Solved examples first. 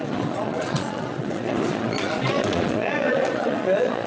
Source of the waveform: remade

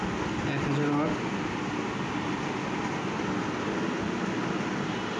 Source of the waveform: recorded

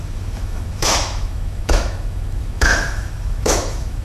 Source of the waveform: remade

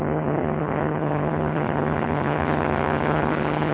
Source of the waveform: remade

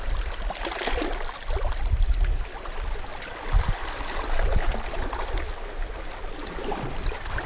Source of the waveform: recorded